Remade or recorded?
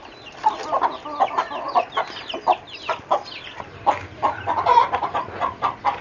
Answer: remade